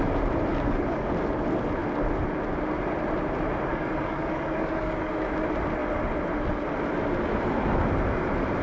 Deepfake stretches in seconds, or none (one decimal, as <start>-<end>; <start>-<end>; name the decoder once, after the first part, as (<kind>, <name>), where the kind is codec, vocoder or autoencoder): 0.5-1.1 (codec, DAC); 3.7-5.1